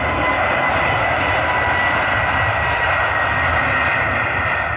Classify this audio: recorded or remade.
recorded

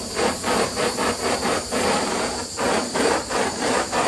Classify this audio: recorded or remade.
remade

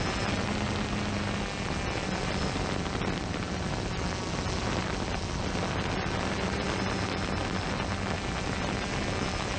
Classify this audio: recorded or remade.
recorded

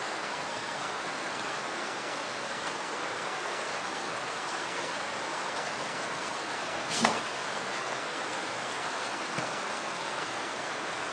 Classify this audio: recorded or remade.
remade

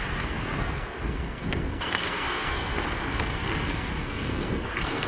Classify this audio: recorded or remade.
remade